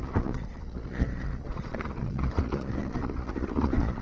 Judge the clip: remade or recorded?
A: remade